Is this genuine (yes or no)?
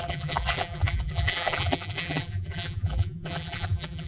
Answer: no